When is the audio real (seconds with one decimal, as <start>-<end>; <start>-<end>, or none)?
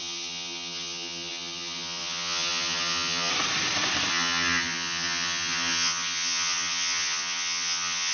3.3-4.1